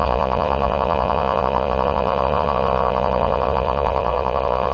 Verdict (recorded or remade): remade